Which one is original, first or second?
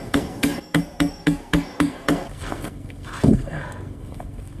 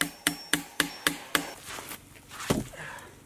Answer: second